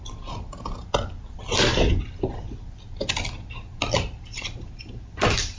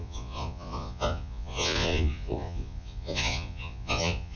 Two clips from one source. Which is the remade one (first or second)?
second